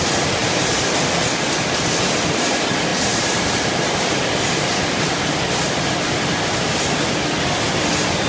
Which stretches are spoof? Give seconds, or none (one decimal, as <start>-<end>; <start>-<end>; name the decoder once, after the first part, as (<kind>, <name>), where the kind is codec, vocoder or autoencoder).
0.4-1.0 (vocoder, BigVGAN v2); 2.9-6.8